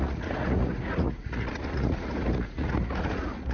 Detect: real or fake fake